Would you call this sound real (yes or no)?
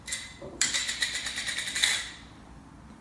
no